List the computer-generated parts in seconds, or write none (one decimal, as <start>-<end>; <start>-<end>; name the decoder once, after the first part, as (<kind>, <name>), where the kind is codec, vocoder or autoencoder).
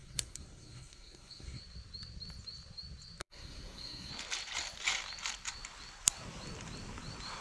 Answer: 0.0-1.6 (codec, SNAC); 3.2-4.1